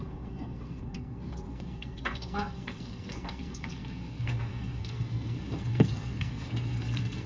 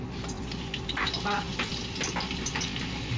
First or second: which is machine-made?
first